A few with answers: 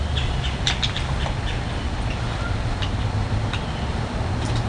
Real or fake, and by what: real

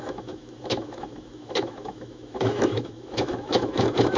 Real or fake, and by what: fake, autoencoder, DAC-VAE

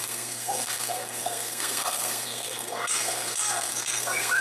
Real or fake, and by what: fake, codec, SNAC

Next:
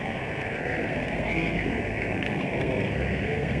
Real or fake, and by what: fake, codec, SNAC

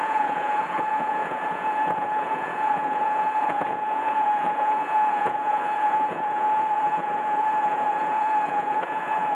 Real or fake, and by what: fake, vocoder, Vocos